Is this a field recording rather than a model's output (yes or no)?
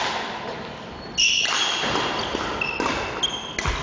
yes